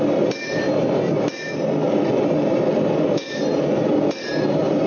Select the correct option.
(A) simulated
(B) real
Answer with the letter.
A